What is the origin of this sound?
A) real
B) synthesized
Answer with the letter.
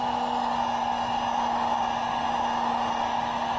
A